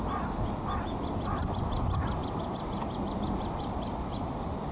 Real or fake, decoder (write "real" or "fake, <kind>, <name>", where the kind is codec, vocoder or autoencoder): real